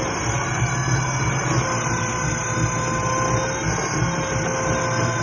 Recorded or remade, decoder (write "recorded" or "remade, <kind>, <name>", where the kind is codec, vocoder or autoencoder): recorded